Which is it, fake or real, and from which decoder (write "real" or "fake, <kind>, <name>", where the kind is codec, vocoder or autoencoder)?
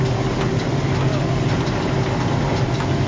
real